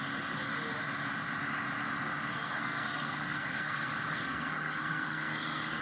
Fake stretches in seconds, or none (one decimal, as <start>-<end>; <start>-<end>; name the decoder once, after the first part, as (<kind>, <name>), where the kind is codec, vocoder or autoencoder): 2.3-5.8 (codec, SNAC)